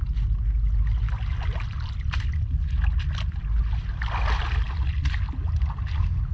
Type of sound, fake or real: real